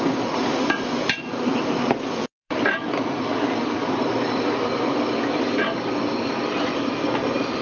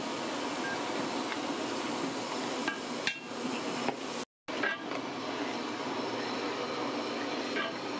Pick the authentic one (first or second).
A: second